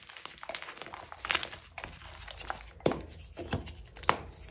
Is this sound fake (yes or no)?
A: no